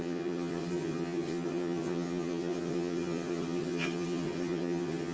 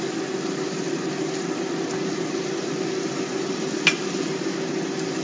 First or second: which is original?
second